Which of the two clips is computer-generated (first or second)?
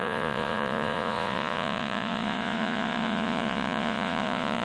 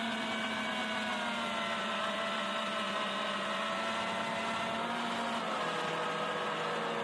first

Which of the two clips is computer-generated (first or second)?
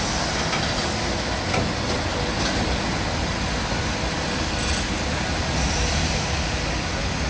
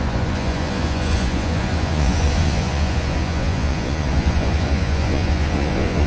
second